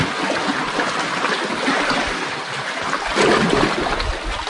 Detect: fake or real real